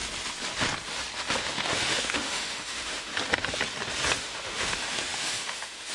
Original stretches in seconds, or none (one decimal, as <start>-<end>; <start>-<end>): 0.0-1.4; 3.1-4.2